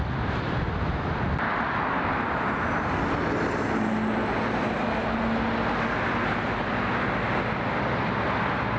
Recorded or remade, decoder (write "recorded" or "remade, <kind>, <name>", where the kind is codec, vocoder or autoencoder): recorded